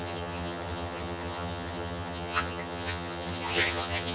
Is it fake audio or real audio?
fake